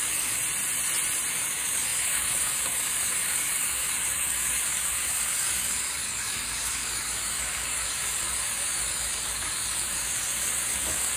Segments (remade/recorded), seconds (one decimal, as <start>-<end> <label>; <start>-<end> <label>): 0.0-0.4 remade; 0.4-1.3 recorded; 1.3-11.2 remade